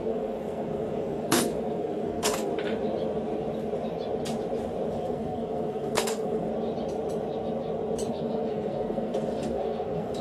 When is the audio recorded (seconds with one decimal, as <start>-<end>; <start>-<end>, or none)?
2.5-4.9; 6.5-8.1